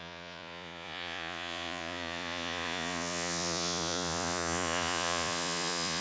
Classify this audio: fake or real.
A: fake